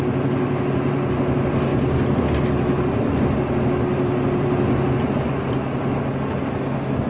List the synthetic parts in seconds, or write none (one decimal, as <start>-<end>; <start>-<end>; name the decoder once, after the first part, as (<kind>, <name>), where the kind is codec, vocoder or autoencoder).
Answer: none